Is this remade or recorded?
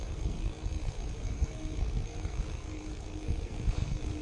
remade